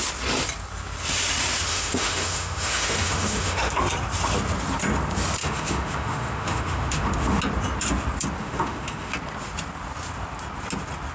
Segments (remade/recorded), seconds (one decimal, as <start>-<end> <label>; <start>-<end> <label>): 0.0-1.7 recorded; 1.7-3.8 remade; 3.8-5.4 recorded; 5.4-7.4 remade; 7.4-8.4 recorded; 8.4-9.1 remade; 9.1-11.1 recorded